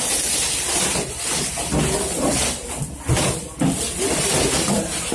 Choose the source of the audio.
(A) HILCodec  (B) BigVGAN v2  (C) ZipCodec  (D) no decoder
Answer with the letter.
D